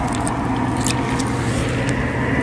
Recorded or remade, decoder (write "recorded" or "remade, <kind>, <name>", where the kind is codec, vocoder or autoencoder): recorded